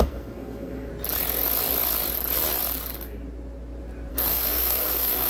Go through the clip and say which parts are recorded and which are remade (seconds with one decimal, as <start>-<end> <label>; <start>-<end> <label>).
0.0-0.9 remade; 0.9-4.1 recorded; 4.1-5.3 remade